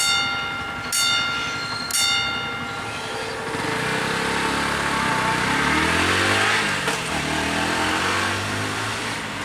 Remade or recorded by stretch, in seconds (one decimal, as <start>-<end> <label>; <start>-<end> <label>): 0.0-9.4 recorded